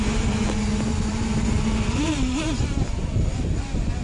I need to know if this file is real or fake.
real